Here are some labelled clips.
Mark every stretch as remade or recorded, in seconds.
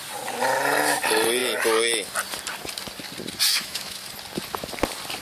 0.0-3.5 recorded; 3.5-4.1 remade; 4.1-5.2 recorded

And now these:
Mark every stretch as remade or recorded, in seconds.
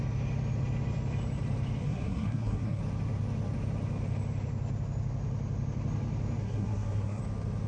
0.0-1.8 recorded; 1.8-2.8 remade; 2.8-6.4 recorded; 6.4-7.2 remade; 7.2-7.7 recorded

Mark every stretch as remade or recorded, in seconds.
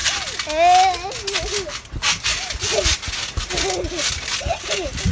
0.0-5.1 recorded